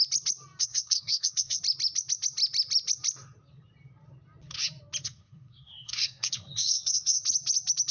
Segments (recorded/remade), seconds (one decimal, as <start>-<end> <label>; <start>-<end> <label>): 0.0-0.6 recorded; 0.6-1.6 remade; 1.6-5.0 recorded; 5.0-7.2 remade; 7.2-7.9 recorded